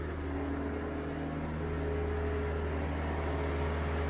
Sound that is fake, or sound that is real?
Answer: real